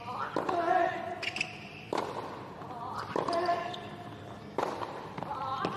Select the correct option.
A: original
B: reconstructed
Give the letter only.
A